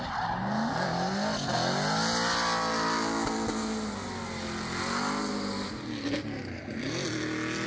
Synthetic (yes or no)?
no